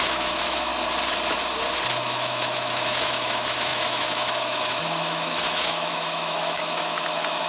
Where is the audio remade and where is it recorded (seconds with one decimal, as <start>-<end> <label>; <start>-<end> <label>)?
0.0-0.7 remade; 0.7-2.0 recorded; 2.0-7.5 remade